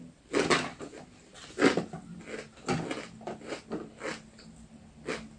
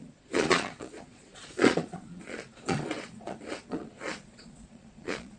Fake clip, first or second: second